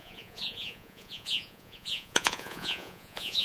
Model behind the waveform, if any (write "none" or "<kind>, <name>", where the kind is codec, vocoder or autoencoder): vocoder, Vocos